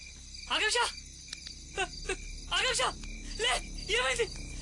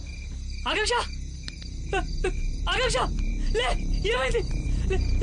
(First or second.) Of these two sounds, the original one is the first